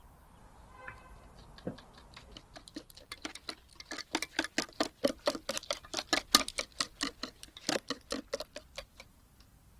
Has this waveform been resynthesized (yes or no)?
no